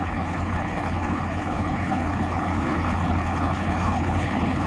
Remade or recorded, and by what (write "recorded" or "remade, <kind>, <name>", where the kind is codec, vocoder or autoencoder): remade, codec, HILCodec